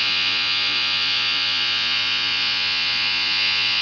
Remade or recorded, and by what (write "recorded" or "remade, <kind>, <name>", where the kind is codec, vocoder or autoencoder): remade, vocoder, Vocos